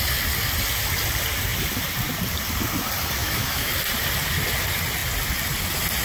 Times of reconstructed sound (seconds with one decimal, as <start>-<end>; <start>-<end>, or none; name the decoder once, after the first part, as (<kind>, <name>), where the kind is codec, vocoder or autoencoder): 3.2-3.7 (autoencoder, DAC-VAE)